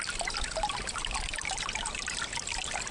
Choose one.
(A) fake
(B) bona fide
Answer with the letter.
B